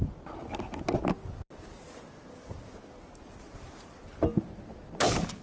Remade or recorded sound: recorded